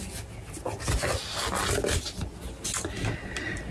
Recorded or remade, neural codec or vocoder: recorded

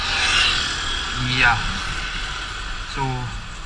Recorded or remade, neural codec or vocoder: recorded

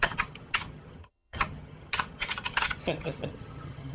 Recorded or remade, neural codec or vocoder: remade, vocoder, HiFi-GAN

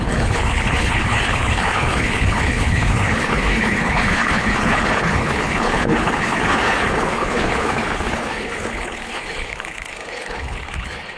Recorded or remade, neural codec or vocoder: remade, codec, HILCodec